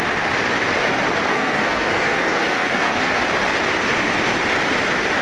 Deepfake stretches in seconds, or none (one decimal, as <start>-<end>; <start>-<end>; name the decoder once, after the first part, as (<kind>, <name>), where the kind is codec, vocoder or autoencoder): 1.3-3.2 (codec, SNAC)